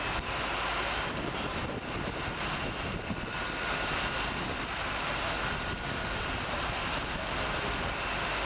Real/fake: real